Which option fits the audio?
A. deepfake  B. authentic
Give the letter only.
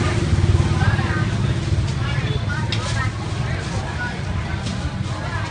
B